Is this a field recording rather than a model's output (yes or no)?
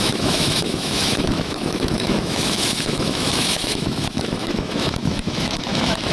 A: no